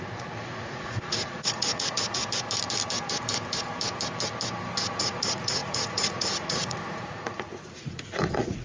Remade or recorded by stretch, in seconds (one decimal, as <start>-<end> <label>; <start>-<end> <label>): 0.0-2.2 remade; 2.2-5.0 recorded; 5.0-8.6 remade